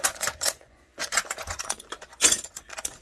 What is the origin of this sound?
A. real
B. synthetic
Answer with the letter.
B